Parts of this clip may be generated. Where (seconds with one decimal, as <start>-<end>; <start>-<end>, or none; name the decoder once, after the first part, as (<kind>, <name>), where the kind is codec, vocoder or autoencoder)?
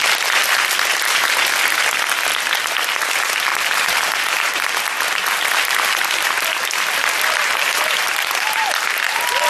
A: 3.5-4.7 (vocoder, BigVGAN v2); 7.4-8.7